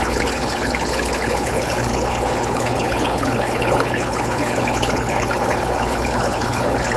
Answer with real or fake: fake